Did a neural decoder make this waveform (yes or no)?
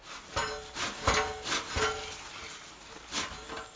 no